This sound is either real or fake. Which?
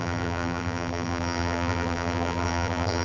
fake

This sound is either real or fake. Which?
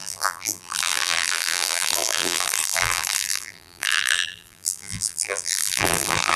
fake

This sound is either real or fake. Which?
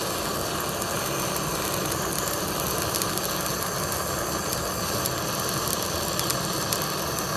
real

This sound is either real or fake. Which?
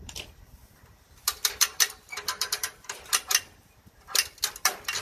fake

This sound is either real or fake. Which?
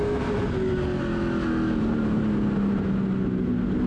real